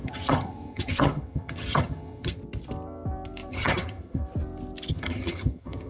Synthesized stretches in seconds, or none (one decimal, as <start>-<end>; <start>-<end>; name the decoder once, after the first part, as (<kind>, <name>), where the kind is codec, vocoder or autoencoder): 0.0-2.4 (vocoder, HiFi-GAN); 3.5-4.2; 4.9-5.9